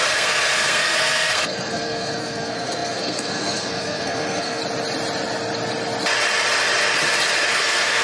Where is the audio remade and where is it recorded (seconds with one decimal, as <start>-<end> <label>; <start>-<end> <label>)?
0.0-4.6 remade; 4.6-7.5 recorded; 7.5-8.0 remade